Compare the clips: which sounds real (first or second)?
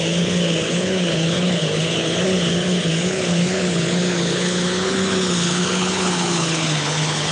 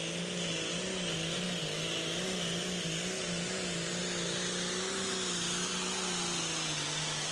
second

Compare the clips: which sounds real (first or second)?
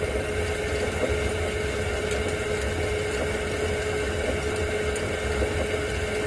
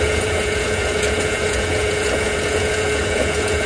first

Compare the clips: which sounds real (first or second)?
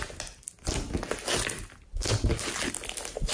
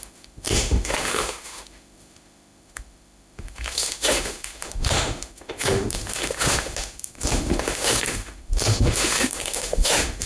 first